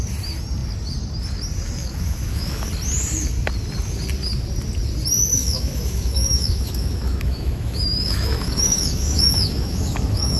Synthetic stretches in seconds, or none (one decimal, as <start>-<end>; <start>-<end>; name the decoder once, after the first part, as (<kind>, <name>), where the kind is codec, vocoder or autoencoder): 1.8-2.7 (autoencoder, DAC-VAE); 5.3-10.4